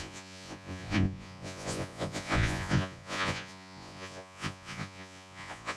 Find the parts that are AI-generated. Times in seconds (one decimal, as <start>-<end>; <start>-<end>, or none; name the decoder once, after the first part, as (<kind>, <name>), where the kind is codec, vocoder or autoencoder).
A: 0.0-5.8 (vocoder, Vocos)